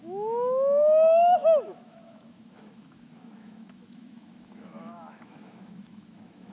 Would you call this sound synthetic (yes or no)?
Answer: yes